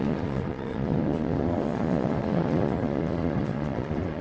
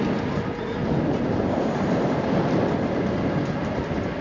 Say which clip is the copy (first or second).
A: first